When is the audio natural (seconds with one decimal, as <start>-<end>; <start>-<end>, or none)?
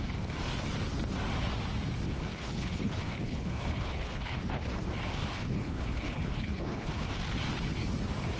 0.0-2.3; 4.4-5.2; 7.1-8.4